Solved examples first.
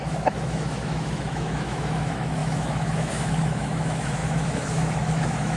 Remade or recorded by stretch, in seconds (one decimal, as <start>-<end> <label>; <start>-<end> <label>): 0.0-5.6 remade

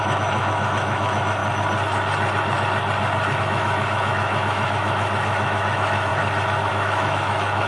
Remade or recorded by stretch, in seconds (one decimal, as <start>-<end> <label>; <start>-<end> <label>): 0.0-1.4 remade; 1.4-3.4 recorded; 3.4-6.1 remade; 6.1-6.7 recorded; 6.7-7.7 remade

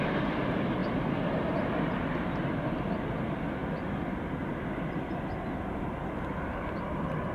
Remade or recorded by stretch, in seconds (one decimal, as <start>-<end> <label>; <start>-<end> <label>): 0.0-7.3 recorded

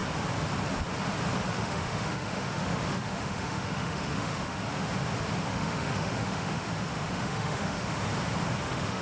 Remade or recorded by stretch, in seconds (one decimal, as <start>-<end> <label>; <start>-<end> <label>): 0.0-1.5 recorded; 1.5-4.6 remade; 4.6-5.5 recorded; 5.5-8.1 remade; 8.1-8.6 recorded; 8.6-9.0 remade